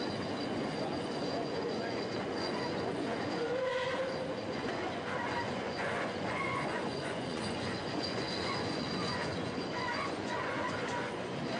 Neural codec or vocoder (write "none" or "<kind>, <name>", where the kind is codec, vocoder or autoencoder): vocoder, Vocos